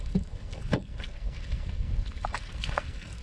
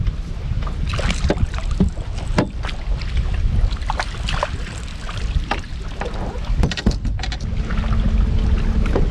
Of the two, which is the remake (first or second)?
first